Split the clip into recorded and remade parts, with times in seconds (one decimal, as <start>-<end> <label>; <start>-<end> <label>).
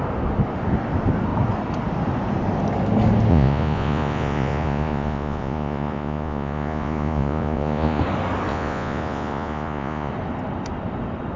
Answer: 0.0-3.3 recorded; 3.3-8.0 remade; 8.0-8.5 recorded; 8.5-10.1 remade; 10.1-11.4 recorded